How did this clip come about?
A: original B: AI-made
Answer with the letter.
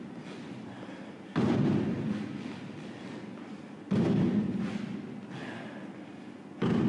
A